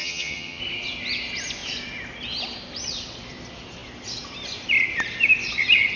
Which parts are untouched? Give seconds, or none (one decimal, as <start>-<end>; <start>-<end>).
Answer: 0.6-6.0